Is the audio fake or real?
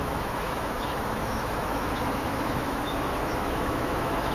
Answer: fake